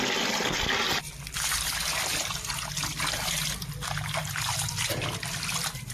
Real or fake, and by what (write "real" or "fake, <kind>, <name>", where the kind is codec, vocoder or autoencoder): real